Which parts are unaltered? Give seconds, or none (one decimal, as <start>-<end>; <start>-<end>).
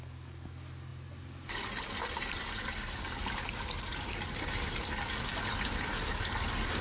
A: 0.0-6.8